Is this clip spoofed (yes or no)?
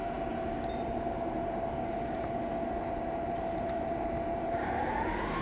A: yes